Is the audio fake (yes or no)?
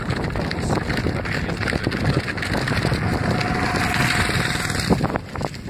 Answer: no